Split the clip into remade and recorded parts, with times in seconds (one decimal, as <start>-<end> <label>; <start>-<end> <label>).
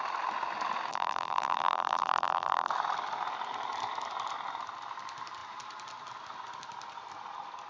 0.0-0.9 recorded; 0.9-2.7 remade; 2.7-7.7 recorded